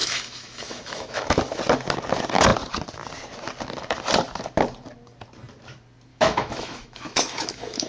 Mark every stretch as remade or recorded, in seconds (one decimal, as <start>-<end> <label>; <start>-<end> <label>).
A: 0.0-1.4 remade; 1.4-6.1 recorded; 6.1-7.9 remade